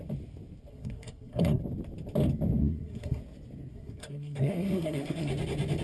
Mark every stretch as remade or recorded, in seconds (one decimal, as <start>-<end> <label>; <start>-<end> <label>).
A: 0.0-0.7 recorded; 0.7-1.6 remade; 1.6-2.6 recorded; 2.6-3.2 remade; 3.2-3.7 recorded; 3.7-5.3 remade; 5.3-5.8 recorded